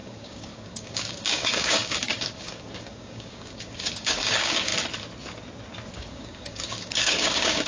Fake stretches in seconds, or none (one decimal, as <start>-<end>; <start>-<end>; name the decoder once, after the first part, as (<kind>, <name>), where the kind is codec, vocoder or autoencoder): 0.0-4.7 (codec, DAC); 5.9-7.7